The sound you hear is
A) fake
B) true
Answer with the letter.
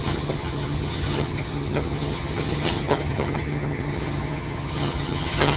A